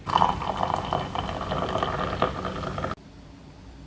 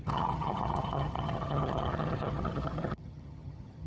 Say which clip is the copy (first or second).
second